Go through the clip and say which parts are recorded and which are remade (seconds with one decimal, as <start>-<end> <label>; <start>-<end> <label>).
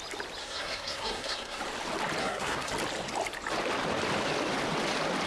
0.0-0.4 recorded; 0.4-1.6 remade; 1.6-2.2 recorded; 2.2-2.7 remade; 2.7-5.3 recorded